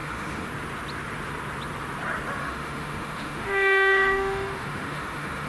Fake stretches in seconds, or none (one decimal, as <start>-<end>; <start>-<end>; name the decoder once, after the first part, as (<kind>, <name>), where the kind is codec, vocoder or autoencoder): 0.0-0.5 (autoencoder, DAC-VAE); 2.4-5.5